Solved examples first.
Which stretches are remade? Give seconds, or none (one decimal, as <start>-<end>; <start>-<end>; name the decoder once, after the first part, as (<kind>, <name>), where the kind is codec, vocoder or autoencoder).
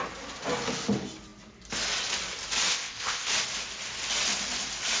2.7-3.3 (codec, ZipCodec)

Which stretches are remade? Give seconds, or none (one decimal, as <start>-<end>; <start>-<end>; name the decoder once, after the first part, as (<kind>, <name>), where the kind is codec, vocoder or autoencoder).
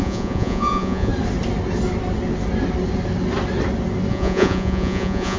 0.0-1.1 (vocoder, Vocos); 4.1-5.4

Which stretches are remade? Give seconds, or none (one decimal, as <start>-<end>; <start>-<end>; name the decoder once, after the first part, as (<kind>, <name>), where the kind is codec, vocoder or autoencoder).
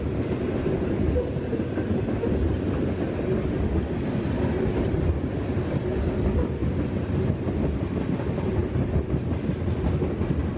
none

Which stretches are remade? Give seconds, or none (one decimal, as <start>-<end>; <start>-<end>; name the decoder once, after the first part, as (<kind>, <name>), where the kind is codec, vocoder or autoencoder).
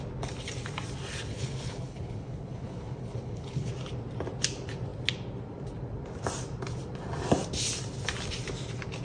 1.3-3.7 (codec, HILCodec)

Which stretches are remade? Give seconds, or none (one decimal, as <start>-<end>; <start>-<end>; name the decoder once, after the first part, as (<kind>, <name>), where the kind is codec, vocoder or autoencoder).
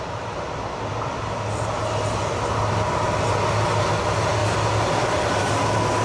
none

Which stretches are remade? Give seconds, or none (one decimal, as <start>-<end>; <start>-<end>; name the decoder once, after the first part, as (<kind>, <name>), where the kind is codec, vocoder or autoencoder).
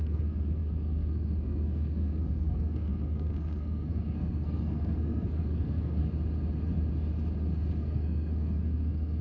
0.0-6.0 (codec, SNAC); 7.8-9.2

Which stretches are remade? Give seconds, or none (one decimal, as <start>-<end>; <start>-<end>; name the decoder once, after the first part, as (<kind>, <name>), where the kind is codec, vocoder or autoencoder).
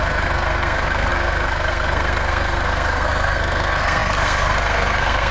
0.0-5.3 (codec, SNAC)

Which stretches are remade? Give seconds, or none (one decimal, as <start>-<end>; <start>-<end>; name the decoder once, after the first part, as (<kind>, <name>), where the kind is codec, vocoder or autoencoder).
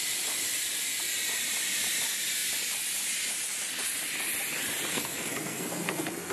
4.9-6.3 (codec, SNAC)